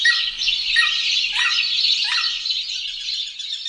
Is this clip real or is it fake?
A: real